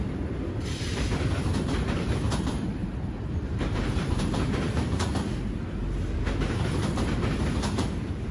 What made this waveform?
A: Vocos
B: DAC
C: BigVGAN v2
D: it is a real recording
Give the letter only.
C